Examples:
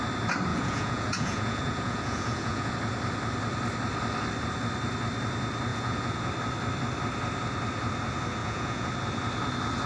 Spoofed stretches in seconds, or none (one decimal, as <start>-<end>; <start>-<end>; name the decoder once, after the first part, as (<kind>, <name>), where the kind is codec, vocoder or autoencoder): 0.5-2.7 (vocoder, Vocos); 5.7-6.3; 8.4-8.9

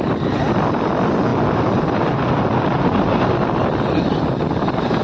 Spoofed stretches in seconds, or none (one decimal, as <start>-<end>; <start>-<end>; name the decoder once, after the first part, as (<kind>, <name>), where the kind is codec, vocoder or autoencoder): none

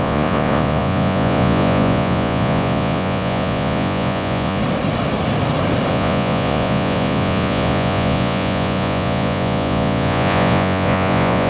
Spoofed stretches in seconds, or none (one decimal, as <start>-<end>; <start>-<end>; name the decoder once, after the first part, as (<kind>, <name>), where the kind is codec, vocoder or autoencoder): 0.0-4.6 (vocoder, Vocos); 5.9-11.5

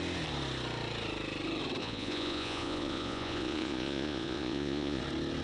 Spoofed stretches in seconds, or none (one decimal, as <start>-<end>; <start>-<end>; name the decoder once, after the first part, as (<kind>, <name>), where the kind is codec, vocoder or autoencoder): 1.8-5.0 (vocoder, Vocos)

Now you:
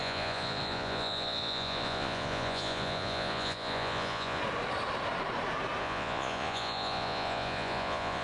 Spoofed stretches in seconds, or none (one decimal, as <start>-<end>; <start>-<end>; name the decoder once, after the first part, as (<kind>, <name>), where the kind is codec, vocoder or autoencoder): 0.0-4.4 (vocoder, Vocos); 5.8-8.2

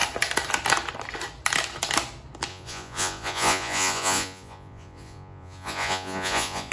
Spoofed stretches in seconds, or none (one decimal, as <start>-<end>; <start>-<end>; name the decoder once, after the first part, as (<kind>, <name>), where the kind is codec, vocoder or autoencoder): 2.5-6.7 (vocoder, Vocos)

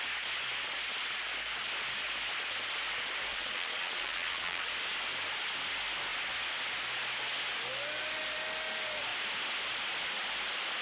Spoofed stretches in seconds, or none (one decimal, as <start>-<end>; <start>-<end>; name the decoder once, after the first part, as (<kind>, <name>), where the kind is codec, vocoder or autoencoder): 3.3-4.7 (vocoder, Vocos)

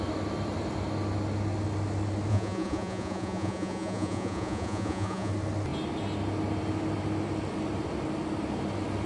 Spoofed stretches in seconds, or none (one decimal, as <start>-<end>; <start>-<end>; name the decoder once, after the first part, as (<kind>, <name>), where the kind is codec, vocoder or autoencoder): 2.3-5.3 (vocoder, Vocos)